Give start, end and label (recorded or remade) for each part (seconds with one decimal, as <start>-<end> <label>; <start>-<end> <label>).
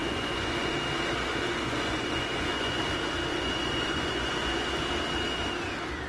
0.0-0.7 remade; 0.7-1.3 recorded; 1.3-2.8 remade; 2.8-3.3 recorded; 3.3-4.8 remade; 4.8-6.1 recorded